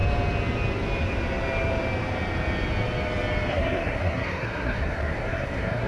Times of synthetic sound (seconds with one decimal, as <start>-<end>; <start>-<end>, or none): 3.5-5.9